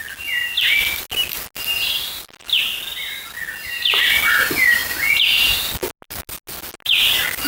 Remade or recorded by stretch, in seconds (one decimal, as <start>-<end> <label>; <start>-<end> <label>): 0.0-7.5 recorded